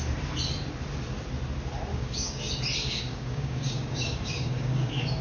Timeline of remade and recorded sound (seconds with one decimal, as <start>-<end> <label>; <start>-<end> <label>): 0.0-1.9 recorded; 1.9-2.5 remade; 2.5-2.9 recorded; 2.9-5.2 remade